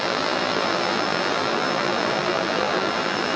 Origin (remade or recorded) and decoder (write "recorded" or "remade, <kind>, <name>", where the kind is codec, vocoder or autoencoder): remade, vocoder, BigVGAN v2